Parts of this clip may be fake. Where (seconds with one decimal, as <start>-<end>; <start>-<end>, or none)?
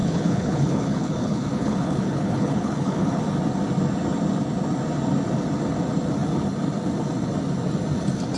0.0-3.2